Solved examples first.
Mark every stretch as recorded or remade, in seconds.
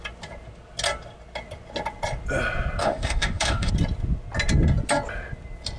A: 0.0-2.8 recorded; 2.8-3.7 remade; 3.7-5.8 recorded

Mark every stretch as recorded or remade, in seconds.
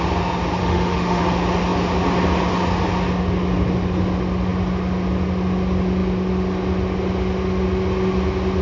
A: 0.0-0.6 recorded; 0.6-1.2 remade; 1.2-8.6 recorded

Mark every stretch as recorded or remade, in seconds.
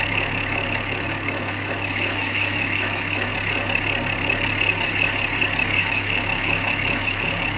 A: 0.0-3.3 remade; 3.3-5.8 recorded; 5.8-7.6 remade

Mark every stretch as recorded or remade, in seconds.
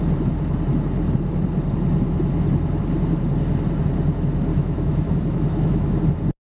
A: 0.0-4.5 recorded; 4.5-6.0 remade; 6.0-6.4 recorded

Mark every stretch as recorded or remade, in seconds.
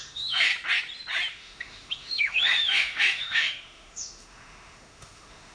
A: 0.0-0.5 remade; 0.5-1.3 recorded; 1.3-5.5 remade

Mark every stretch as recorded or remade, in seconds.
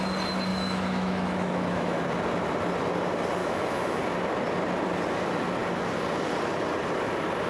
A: 0.0-0.5 recorded; 0.5-2.0 remade; 2.0-3.4 recorded; 3.4-4.0 remade; 4.0-7.5 recorded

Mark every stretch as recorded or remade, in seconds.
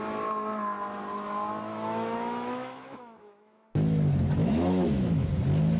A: 0.0-1.7 recorded; 1.7-3.7 remade; 3.7-4.4 recorded; 4.4-5.3 remade; 5.3-5.8 recorded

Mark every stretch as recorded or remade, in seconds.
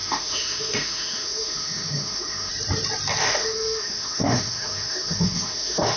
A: 0.0-2.5 remade; 2.5-3.2 recorded; 3.2-6.0 remade